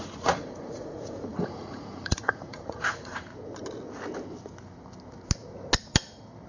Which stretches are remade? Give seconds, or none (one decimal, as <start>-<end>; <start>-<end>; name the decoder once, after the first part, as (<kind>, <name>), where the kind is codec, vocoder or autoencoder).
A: 0.0-3.3 (vocoder, Vocos)